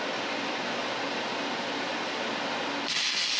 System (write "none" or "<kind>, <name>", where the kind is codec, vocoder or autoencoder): none